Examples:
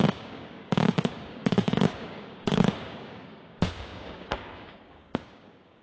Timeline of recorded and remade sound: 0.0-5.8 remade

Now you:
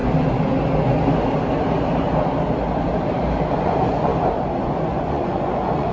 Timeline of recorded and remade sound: 0.0-3.5 recorded; 3.5-4.1 remade; 4.1-4.6 recorded; 4.6-5.9 remade